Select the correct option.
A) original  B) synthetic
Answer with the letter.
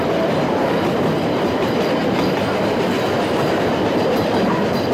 A